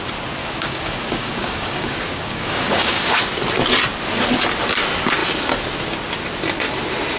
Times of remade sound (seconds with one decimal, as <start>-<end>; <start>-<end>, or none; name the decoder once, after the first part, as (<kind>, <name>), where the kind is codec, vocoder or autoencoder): 0.4-3.2 (codec, DAC)